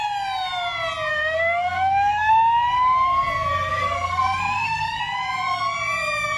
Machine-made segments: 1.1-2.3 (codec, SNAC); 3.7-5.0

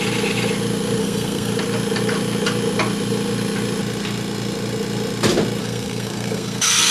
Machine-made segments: 1.0-1.5 (codec, SNAC); 5.6-6.9

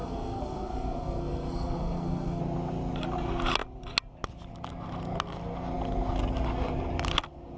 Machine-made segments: 0.0-2.4 (codec, SNAC)